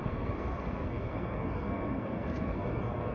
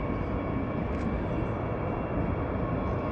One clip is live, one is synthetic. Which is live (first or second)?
second